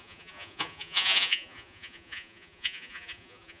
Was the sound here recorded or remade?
remade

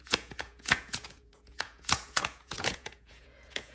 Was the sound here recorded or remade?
remade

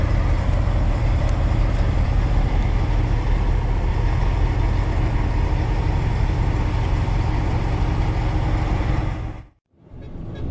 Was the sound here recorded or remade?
recorded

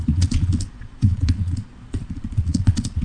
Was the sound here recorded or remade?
remade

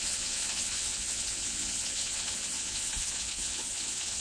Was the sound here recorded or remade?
remade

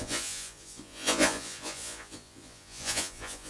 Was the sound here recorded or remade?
remade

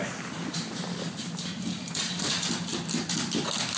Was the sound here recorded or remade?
recorded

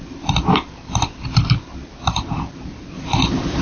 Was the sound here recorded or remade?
recorded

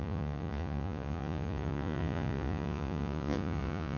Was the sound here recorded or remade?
remade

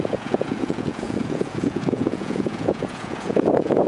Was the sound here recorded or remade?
remade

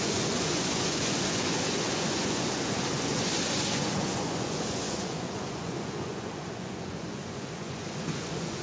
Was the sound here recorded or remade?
remade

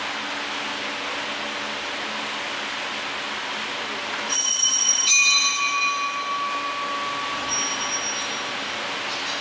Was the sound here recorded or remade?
recorded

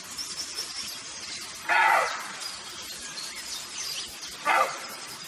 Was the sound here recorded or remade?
recorded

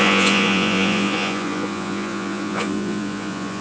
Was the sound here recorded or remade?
remade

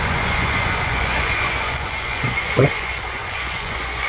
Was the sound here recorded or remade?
remade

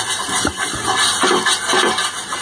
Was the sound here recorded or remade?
recorded